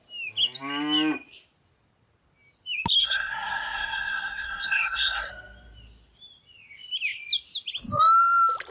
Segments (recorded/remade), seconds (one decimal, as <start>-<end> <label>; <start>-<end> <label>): 0.0-3.0 recorded; 3.0-5.3 remade; 5.3-8.7 recorded